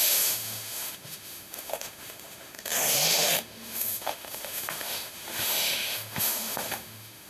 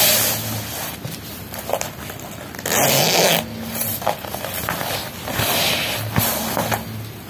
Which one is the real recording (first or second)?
second